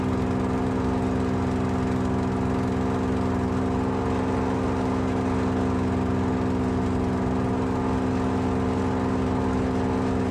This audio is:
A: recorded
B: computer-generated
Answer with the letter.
A